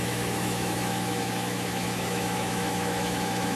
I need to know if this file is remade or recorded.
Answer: remade